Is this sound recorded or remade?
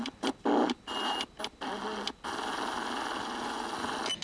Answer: recorded